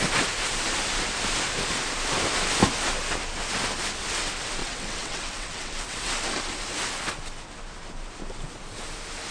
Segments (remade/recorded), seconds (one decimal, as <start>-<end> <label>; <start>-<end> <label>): 0.0-4.6 recorded; 4.6-6.1 remade; 6.1-9.3 recorded